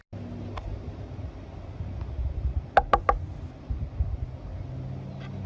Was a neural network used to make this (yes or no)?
no